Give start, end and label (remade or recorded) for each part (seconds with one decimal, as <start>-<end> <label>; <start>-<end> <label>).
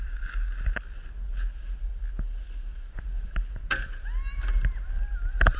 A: 0.0-5.6 recorded